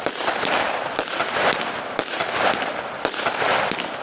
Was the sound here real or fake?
real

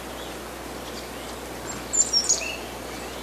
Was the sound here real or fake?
real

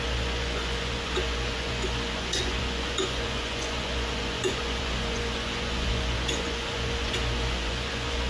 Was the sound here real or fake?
fake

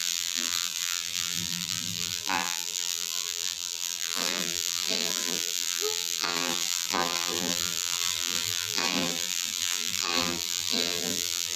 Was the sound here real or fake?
fake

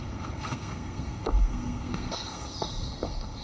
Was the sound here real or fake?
fake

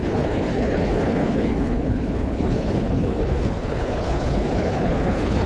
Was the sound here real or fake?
fake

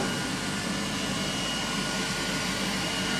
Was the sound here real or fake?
real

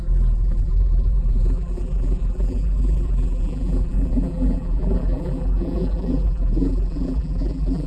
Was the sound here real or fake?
fake